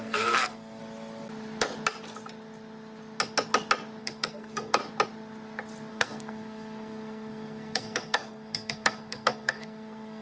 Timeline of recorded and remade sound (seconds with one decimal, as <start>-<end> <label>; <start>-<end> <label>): 0.0-0.8 remade; 0.8-4.0 recorded; 4.0-4.8 remade; 4.8-5.9 recorded; 5.9-10.2 remade